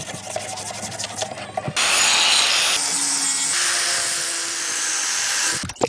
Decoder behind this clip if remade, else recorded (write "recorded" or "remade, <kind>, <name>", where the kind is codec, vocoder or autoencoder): recorded